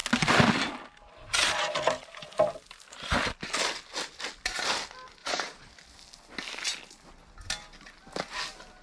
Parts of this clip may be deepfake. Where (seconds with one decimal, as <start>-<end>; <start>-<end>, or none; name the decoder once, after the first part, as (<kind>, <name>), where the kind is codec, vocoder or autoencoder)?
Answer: 5.2-5.7 (vocoder, Vocos)